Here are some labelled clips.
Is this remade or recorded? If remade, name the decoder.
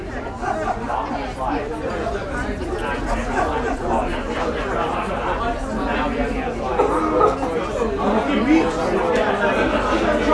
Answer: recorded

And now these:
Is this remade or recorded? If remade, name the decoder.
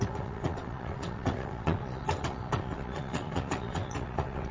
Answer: remade, vocoder, WaveNeXt